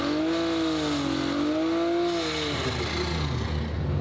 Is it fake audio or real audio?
real